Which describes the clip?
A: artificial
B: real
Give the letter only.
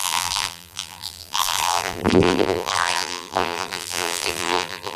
A